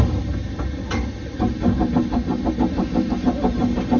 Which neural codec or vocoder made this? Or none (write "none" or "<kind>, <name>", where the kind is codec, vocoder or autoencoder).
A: none